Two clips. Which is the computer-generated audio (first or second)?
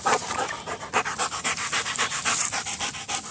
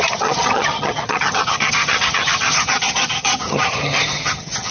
second